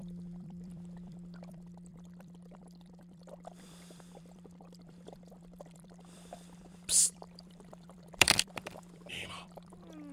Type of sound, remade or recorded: remade